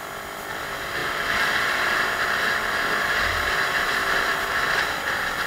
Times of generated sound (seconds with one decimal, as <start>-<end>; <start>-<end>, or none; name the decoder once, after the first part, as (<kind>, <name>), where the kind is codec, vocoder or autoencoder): none